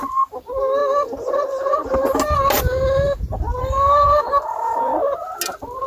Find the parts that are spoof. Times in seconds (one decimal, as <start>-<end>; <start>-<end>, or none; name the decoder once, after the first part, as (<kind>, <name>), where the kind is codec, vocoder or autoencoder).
3.6-4.2 (codec, SNAC)